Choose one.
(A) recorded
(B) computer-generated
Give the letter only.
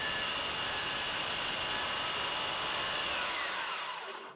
B